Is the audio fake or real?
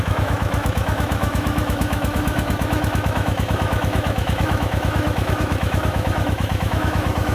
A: fake